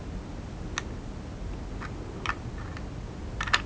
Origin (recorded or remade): recorded